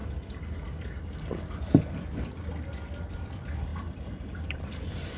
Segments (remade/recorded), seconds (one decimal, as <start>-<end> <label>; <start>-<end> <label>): 0.0-3.1 recorded; 3.1-5.2 remade